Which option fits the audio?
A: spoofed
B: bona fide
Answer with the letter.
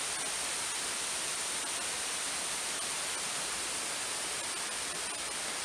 B